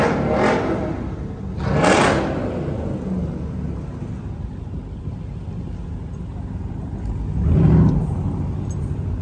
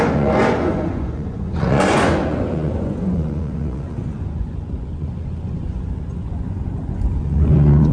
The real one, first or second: first